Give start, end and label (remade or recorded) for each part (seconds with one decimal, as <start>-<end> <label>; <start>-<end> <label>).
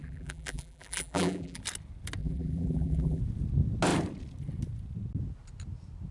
0.0-1.6 remade; 1.6-2.2 recorded; 2.2-3.2 remade; 3.2-6.1 recorded